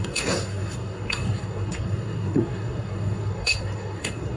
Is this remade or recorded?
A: remade